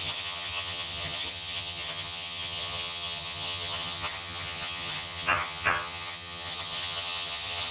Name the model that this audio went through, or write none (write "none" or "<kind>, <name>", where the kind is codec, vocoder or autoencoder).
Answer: vocoder, HiFi-GAN